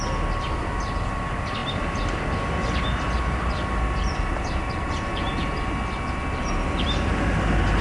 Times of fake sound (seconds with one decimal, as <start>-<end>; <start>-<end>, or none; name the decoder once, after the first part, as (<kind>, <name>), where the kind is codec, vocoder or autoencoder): none